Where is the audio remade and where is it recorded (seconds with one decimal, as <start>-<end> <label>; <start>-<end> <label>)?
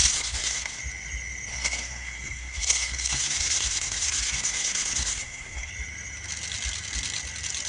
0.0-0.8 remade; 0.8-1.5 recorded; 1.5-5.7 remade; 5.7-7.7 recorded